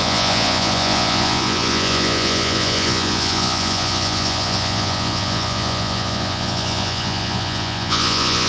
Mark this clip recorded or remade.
remade